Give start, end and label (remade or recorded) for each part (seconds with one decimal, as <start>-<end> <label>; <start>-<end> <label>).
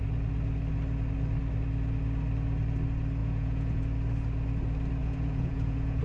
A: 0.0-3.2 recorded; 3.2-3.8 remade; 3.8-5.0 recorded; 5.0-6.0 remade